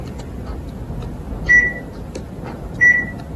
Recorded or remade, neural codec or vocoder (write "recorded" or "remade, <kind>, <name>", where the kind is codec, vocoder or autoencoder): recorded